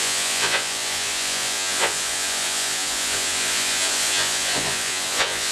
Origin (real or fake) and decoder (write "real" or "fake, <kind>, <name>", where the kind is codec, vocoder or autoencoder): fake, vocoder, Vocos